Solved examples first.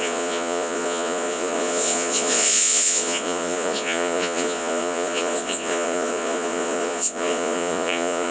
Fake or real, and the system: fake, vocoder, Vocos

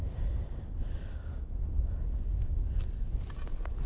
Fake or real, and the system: real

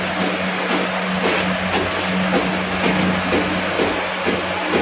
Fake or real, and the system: real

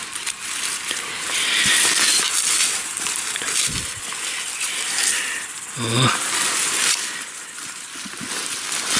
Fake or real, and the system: real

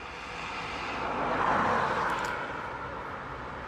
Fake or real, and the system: real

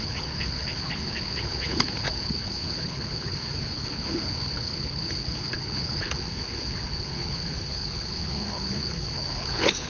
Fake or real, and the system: fake, codec, HILCodec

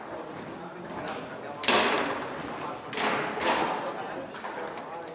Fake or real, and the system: real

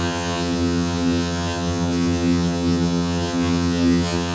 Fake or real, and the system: fake, vocoder, HiFi-GAN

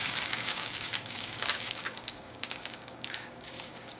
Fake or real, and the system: fake, codec, DAC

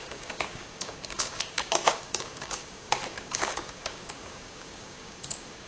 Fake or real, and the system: fake, codec, DAC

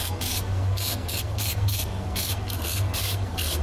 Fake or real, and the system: fake, codec, SNAC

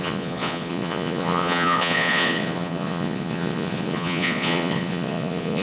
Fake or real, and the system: fake, vocoder, Vocos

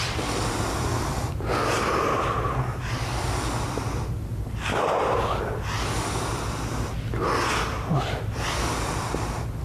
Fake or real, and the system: real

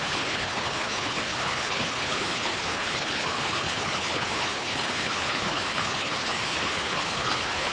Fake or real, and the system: fake, codec, HILCodec